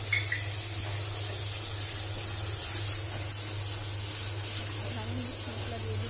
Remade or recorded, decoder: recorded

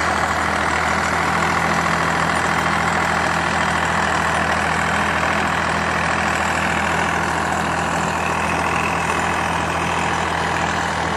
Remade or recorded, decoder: recorded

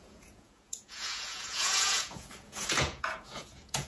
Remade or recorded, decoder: remade, vocoder, Vocos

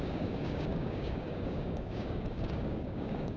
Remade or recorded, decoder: remade, codec, DAC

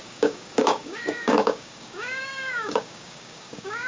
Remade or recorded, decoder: remade, codec, DAC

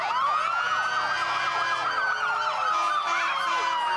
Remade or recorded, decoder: recorded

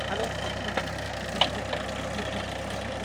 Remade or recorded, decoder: recorded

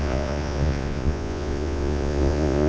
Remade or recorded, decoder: remade, vocoder, Vocos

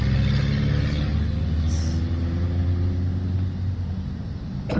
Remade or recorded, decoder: recorded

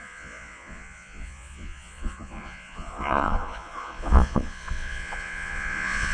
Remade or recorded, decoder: remade, vocoder, Vocos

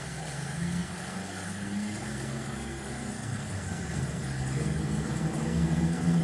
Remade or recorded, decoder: remade, codec, SNAC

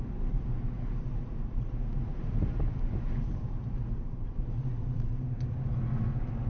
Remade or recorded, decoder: recorded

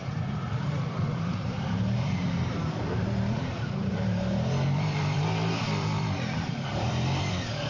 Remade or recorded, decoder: remade, vocoder, BigVGAN v2